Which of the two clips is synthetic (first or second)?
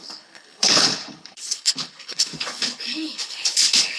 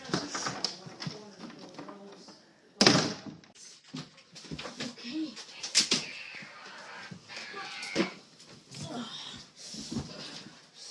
first